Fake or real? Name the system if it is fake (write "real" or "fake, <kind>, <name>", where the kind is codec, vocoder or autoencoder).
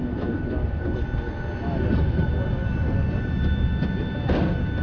real